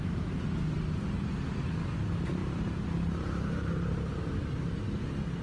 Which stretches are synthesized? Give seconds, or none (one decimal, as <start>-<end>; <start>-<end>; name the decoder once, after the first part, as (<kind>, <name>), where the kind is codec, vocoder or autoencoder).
none